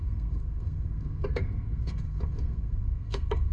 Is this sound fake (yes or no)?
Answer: yes